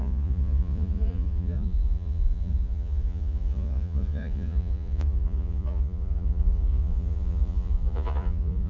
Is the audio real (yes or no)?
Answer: no